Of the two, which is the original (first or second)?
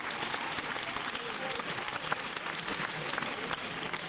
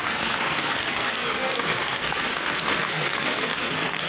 first